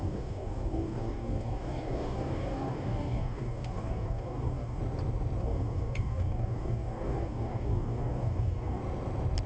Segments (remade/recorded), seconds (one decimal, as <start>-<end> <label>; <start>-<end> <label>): 0.0-4.8 remade; 4.8-5.4 recorded; 5.4-8.8 remade; 8.8-9.5 recorded